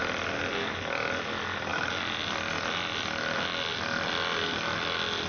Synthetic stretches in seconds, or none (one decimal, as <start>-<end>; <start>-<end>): none